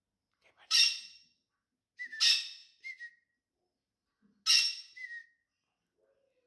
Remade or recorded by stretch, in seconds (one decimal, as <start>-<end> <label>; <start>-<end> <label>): 0.0-1.5 remade; 1.5-6.5 recorded